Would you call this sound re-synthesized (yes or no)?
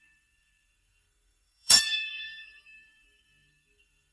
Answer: yes